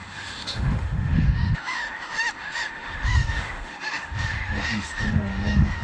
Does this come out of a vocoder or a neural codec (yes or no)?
yes